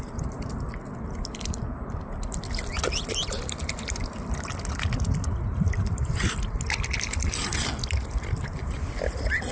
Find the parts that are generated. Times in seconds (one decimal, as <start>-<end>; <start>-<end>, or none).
none